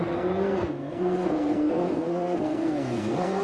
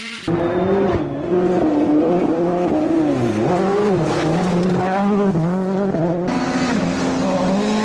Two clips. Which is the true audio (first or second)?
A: second